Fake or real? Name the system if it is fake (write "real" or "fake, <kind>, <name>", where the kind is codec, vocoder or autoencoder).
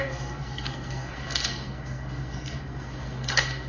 fake, codec, SNAC